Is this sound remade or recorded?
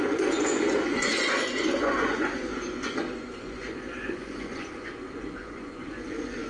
remade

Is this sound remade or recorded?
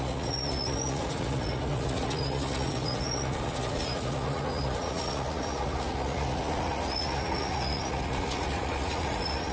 remade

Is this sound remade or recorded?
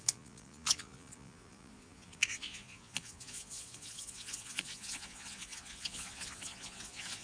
remade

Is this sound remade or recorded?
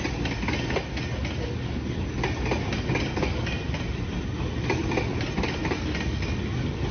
recorded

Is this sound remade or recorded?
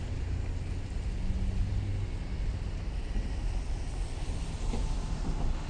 recorded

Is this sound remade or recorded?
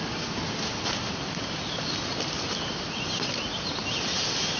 recorded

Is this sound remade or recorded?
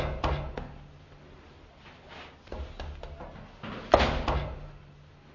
recorded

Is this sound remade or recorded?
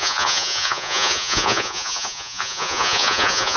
remade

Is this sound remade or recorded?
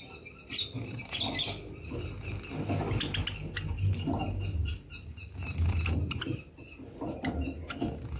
recorded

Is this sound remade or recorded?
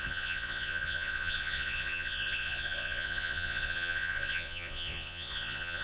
remade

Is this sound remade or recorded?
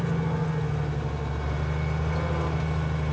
recorded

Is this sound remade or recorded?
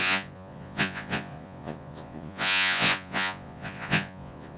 remade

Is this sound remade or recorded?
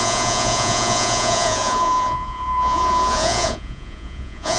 remade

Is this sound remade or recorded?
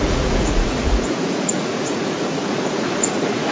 remade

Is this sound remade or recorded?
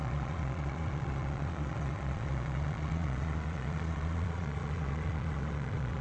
remade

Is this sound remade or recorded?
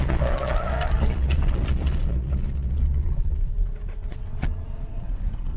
remade